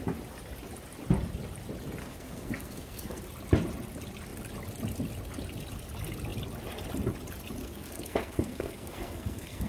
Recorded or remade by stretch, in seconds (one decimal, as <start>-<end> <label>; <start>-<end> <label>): 0.0-2.0 recorded; 2.0-3.2 remade; 3.2-7.6 recorded; 7.6-9.7 remade